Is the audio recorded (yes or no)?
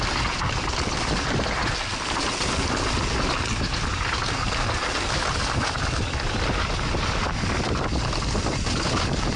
yes